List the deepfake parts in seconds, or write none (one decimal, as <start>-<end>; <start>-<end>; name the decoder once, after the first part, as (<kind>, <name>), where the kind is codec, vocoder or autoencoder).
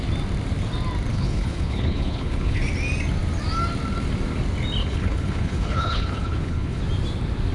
1.1-2.6 (codec, HILCodec); 4.8-6.8